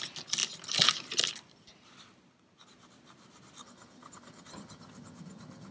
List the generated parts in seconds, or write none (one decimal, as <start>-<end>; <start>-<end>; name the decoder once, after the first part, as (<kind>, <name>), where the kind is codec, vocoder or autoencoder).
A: 3.6-5.7 (vocoder, HiFi-GAN)